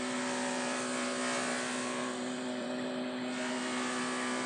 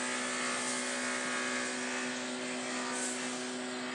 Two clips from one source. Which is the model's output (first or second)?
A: first